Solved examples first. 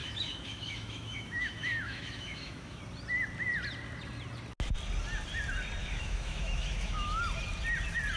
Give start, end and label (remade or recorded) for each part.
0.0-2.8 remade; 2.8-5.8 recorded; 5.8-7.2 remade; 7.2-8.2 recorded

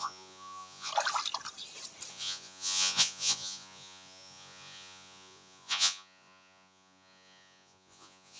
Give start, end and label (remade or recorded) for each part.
0.0-0.9 remade; 0.9-2.1 recorded; 2.1-8.4 remade

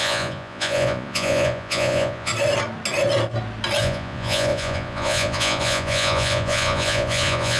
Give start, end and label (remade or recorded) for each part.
0.0-2.3 remade; 2.3-3.8 recorded; 3.8-7.6 remade

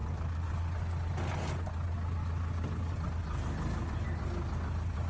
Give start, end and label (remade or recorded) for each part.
0.0-5.1 recorded